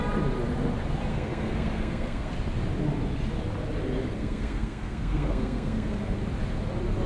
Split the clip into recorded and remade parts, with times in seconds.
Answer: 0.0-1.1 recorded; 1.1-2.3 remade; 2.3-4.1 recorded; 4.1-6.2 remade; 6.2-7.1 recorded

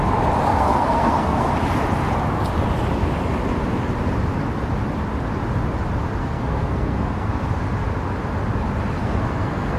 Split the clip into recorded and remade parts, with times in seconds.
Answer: 0.0-0.5 recorded; 0.5-1.5 remade; 1.5-6.2 recorded; 6.2-7.5 remade; 7.5-9.0 recorded; 9.0-9.8 remade